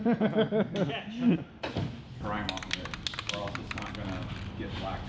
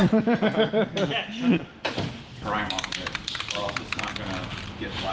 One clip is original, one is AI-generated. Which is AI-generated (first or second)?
second